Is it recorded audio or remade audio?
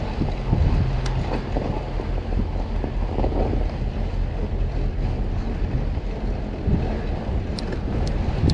recorded